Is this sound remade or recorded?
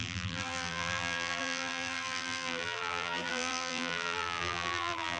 remade